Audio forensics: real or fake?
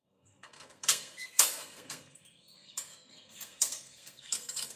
fake